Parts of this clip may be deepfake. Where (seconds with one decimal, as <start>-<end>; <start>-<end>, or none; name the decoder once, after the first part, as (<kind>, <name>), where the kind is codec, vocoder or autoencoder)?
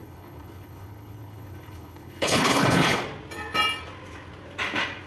0.0-3.0 (codec, HILCodec)